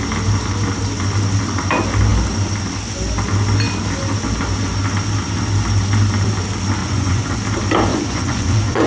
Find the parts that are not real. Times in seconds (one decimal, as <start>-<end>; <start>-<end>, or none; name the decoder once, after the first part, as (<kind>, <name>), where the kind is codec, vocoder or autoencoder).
6.8-7.4 (vocoder, Vocos); 7.9-8.9